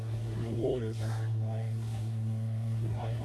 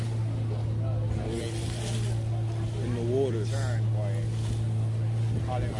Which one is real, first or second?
second